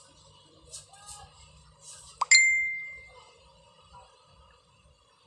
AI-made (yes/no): no